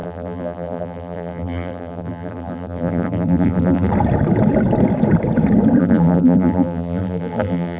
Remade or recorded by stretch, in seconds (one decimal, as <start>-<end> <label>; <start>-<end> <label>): 0.0-3.9 remade; 3.9-5.8 recorded; 5.8-7.8 remade